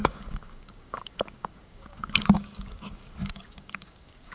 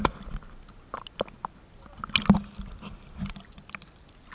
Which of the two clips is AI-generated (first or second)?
first